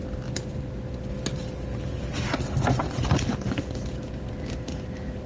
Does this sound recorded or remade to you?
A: recorded